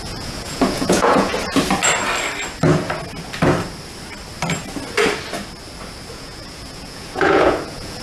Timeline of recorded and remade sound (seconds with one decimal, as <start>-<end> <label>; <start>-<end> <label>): 0.0-1.3 remade; 1.3-6.1 recorded; 6.1-8.0 remade